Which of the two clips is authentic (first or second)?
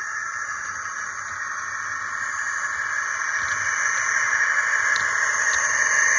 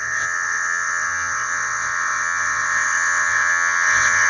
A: first